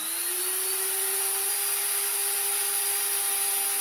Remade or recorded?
recorded